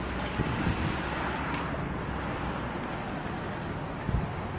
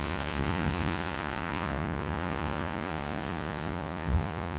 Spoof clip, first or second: second